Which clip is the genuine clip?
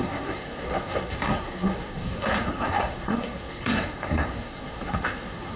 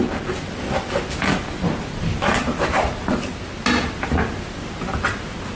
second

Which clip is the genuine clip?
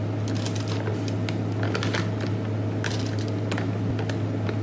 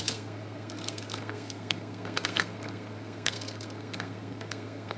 first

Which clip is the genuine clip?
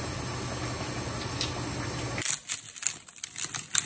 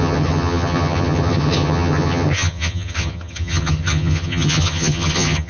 first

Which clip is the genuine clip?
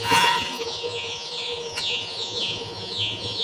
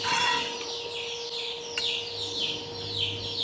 second